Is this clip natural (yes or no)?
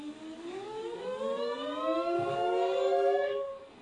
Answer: no